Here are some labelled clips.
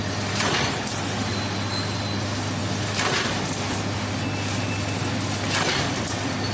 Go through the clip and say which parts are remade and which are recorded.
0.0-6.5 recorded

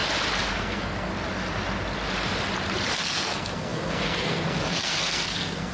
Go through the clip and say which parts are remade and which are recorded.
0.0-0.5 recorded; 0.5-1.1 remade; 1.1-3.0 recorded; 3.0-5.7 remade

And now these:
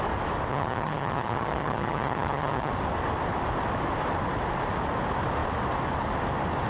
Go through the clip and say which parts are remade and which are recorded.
0.0-0.5 recorded; 0.5-2.7 remade; 2.7-6.7 recorded